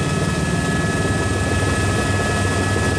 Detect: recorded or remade recorded